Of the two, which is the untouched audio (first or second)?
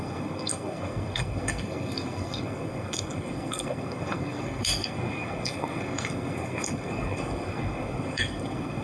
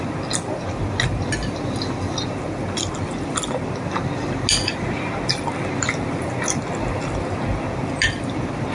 second